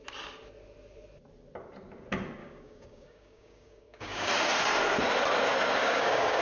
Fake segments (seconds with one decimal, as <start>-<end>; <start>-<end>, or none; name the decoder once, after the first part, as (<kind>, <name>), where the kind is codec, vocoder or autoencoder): 2.4-4.3 (codec, DAC); 5.8-6.4